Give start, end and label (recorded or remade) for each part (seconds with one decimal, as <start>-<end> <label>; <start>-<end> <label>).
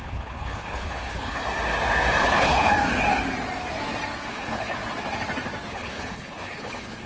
0.0-1.4 remade; 1.4-2.2 recorded; 2.2-2.7 remade; 2.7-4.3 recorded; 4.3-4.8 remade; 4.8-5.7 recorded; 5.7-7.1 remade